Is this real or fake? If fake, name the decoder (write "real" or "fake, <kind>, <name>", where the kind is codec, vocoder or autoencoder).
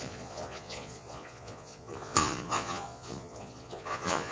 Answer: fake, vocoder, Vocos